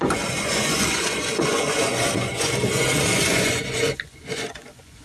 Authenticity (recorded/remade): remade